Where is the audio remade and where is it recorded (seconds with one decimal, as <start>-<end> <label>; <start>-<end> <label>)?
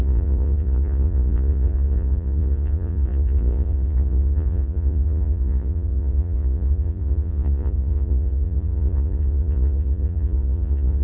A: 0.0-11.0 remade